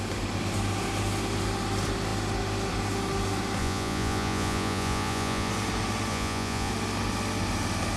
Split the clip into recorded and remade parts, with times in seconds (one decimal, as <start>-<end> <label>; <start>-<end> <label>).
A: 0.0-3.6 recorded; 3.6-5.5 remade; 5.5-6.1 recorded; 6.1-6.7 remade; 6.7-8.0 recorded